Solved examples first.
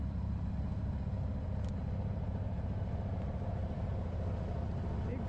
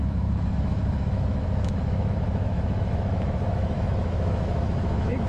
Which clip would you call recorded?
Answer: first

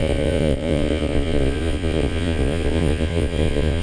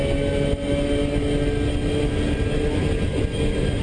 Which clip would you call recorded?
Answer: second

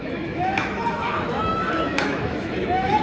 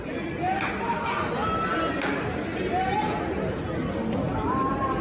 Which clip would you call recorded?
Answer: second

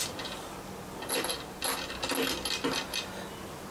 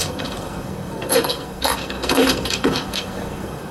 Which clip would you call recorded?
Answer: first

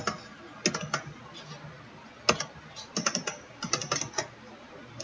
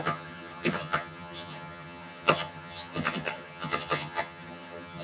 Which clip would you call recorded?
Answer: first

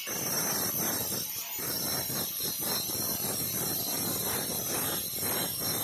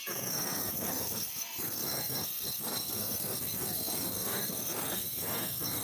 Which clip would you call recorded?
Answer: first